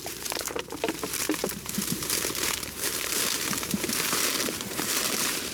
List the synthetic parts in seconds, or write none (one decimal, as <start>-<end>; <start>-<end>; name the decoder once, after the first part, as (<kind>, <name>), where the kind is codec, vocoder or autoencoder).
0.0-5.5 (vocoder, BigVGAN v2)